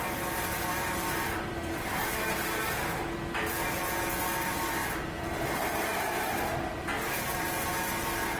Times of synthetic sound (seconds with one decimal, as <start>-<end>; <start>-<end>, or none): 0.5-2.2; 4.8-6.1; 6.9-7.6